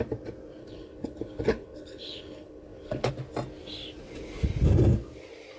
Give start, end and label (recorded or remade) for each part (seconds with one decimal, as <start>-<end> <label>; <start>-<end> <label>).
0.0-0.6 recorded; 0.6-3.1 remade; 3.1-5.6 recorded